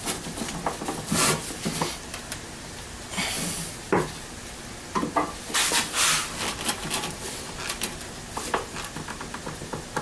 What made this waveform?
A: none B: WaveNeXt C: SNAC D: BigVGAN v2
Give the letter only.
A